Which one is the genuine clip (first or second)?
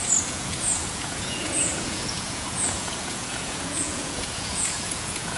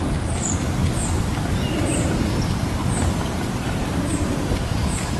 second